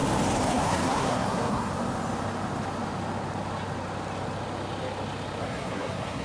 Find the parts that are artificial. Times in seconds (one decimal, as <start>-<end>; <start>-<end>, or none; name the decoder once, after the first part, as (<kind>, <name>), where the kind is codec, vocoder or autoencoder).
0.5-1.7 (codec, SNAC); 5.4-6.2